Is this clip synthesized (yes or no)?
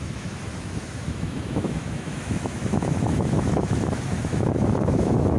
yes